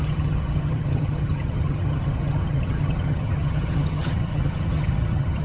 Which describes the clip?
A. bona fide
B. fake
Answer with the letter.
B